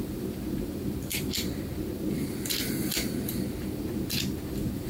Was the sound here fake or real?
fake